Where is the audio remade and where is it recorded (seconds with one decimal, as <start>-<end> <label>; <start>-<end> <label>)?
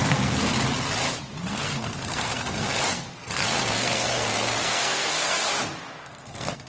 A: 0.0-0.5 remade; 0.5-1.5 recorded; 1.5-5.5 remade; 5.5-6.0 recorded; 6.0-6.7 remade